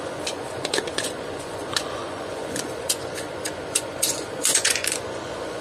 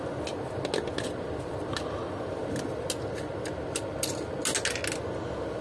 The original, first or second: second